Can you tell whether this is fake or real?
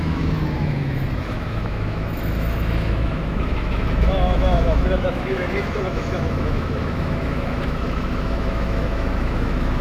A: fake